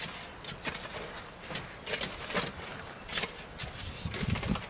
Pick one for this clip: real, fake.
real